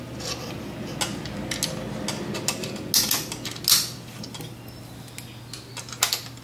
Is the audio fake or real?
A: real